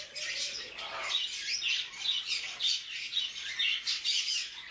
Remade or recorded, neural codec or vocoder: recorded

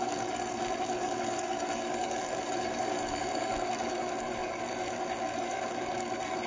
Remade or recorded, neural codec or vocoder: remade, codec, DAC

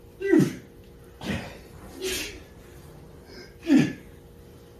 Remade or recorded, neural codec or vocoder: recorded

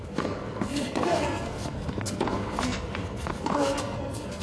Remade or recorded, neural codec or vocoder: remade, codec, SNAC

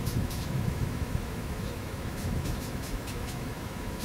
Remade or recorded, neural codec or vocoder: remade, autoencoder, DAC-VAE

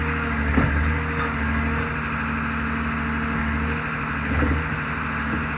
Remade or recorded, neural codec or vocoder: recorded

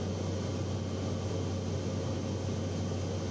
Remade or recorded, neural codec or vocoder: recorded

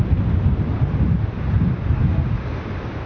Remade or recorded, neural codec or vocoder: recorded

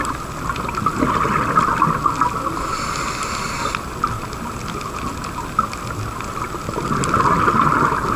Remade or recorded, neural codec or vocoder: recorded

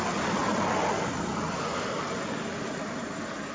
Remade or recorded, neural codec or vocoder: recorded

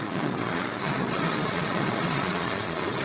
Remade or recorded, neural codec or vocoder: remade, vocoder, Vocos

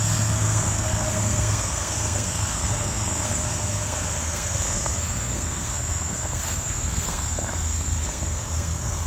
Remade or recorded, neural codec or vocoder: remade, codec, SNAC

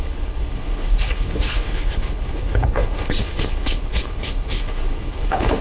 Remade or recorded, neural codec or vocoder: remade, codec, HILCodec